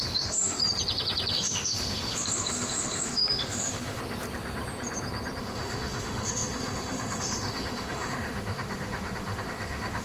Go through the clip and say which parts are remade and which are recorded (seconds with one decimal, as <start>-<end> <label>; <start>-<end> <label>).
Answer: 0.0-0.6 remade; 0.6-1.3 recorded; 1.3-4.0 remade; 4.0-5.4 recorded; 5.4-10.0 remade